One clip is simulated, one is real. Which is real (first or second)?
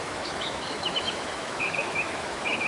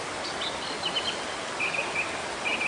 second